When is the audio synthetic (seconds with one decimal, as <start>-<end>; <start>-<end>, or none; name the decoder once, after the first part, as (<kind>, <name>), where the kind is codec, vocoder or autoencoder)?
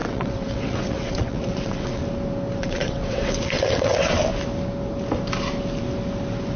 0.0-2.0 (vocoder, WaveNeXt); 2.6-4.2